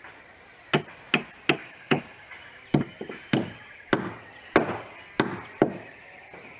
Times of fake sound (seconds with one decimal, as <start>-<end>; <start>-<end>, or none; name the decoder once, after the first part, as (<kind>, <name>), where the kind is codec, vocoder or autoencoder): 1.6-2.3 (codec, DAC)